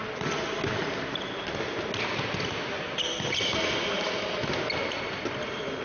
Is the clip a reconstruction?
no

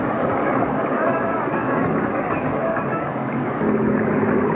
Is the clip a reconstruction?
yes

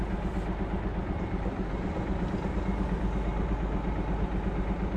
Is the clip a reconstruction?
no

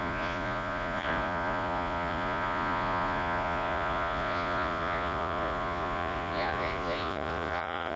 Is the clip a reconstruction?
yes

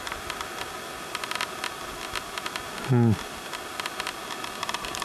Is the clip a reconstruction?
no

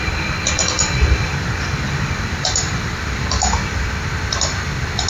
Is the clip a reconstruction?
yes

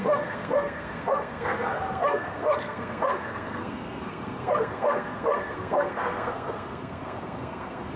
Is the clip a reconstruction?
yes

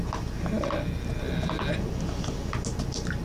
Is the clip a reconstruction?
no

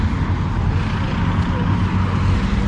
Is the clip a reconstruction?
no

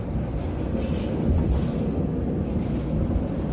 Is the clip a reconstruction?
no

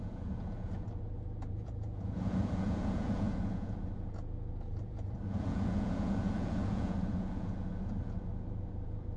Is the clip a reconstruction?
yes